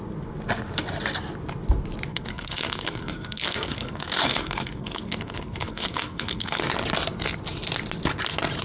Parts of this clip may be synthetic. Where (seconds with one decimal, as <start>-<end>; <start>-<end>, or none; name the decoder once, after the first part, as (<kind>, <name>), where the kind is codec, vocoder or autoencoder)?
2.1-6.6 (codec, SNAC)